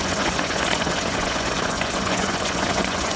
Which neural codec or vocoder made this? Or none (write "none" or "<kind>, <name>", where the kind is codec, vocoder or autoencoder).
vocoder, Vocos